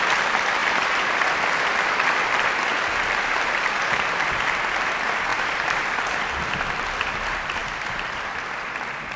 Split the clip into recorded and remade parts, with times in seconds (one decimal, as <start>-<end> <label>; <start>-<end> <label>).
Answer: 0.0-0.6 recorded; 0.6-2.6 remade; 2.6-5.3 recorded; 5.3-6.1 remade; 6.1-7.6 recorded; 7.6-8.3 remade; 8.3-9.2 recorded